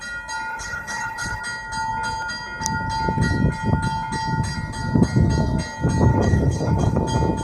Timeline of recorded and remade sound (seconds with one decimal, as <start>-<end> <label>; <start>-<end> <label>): 0.0-0.5 recorded; 0.5-1.4 remade; 1.4-6.1 recorded; 6.1-7.0 remade; 7.0-7.4 recorded